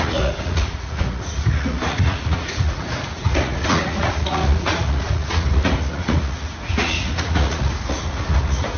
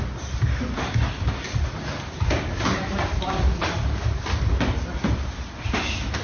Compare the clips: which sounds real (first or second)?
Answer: second